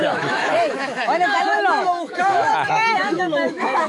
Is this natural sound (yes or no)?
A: no